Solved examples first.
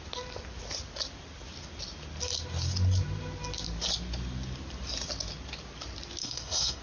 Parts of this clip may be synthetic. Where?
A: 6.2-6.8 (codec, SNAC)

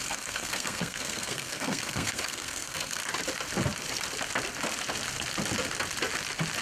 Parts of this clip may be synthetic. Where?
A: 0.0-3.0 (codec, SNAC)

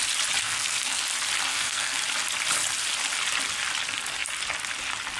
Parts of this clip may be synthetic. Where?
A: 0.4-1.0 (codec, SNAC); 1.5-2.0